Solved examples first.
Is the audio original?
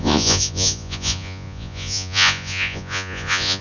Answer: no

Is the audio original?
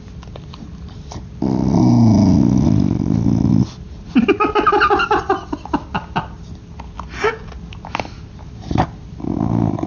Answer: yes